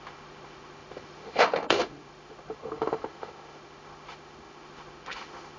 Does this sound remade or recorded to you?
remade